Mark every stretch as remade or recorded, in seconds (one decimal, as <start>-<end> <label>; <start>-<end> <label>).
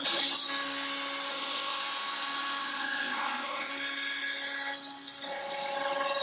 0.0-1.3 recorded; 1.3-1.8 remade; 1.8-2.6 recorded; 2.6-3.7 remade; 3.7-6.2 recorded